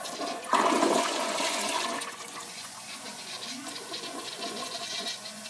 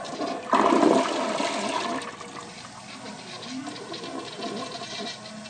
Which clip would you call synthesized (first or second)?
first